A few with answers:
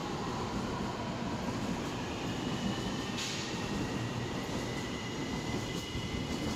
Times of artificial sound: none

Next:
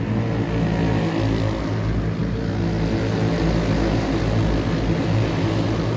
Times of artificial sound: none

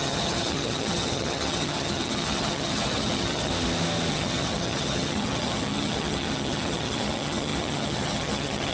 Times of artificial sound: 0.0-3.5; 4.1-8.7

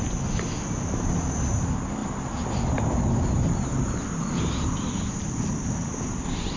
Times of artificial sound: none

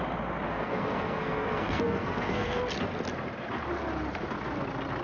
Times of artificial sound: 0.5-2.6

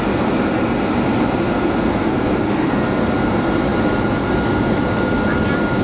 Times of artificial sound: 1.9-2.7